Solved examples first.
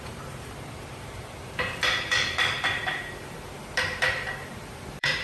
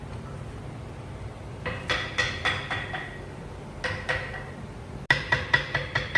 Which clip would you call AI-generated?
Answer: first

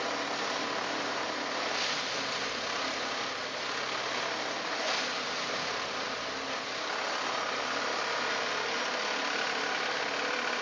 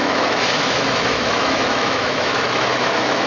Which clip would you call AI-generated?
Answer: second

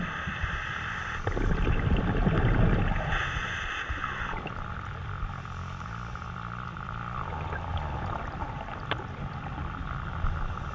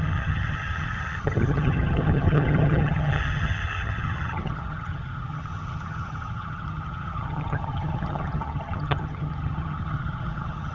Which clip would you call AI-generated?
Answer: second